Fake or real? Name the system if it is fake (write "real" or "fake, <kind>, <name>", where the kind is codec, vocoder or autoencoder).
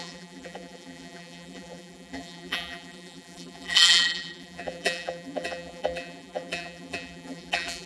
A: fake, vocoder, BigVGAN v2